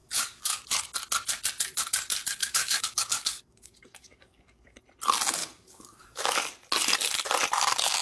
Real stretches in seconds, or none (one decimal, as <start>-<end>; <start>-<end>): 0.6-2.4; 4.8-5.4; 6.5-8.0